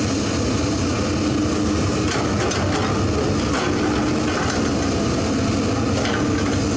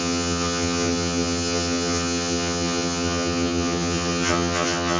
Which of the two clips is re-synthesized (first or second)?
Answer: second